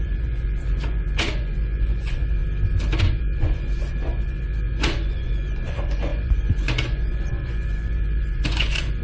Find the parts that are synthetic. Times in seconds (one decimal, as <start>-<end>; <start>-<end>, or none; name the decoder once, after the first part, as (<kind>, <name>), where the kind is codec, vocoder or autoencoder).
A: 0.0-2.4 (vocoder, Vocos); 3.0-9.0

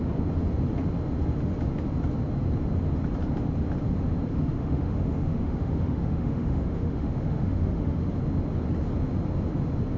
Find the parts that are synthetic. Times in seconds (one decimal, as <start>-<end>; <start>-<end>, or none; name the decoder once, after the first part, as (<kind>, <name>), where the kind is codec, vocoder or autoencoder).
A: 4.3-8.1 (autoencoder, DAC-VAE)

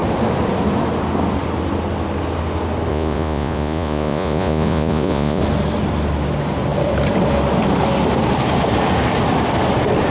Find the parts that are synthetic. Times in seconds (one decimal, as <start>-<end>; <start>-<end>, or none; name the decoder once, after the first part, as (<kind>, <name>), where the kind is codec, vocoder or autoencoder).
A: 2.9-5.4 (vocoder, Vocos)

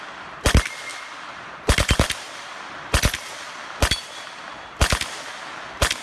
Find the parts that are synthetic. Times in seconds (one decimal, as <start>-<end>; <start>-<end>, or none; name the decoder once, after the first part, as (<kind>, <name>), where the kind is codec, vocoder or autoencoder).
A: 0.9-4.5 (vocoder, BigVGAN v2)